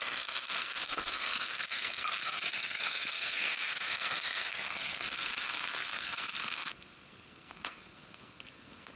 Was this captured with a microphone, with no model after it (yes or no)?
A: no